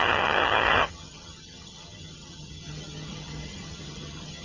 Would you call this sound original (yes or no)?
no